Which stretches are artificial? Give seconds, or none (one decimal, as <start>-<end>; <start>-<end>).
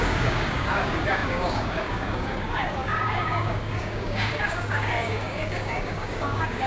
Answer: 0.0-6.7